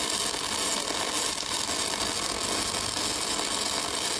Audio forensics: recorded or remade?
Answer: recorded